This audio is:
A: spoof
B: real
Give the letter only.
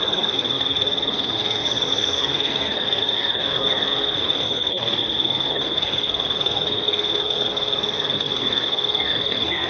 A